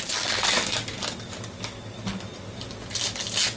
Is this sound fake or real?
real